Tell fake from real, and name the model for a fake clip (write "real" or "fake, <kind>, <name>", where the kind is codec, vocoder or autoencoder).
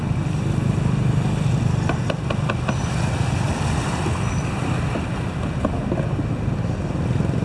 real